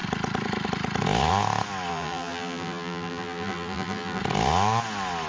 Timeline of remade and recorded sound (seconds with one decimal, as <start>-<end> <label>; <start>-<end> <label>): 0.0-1.9 recorded; 1.9-4.2 remade; 4.2-5.3 recorded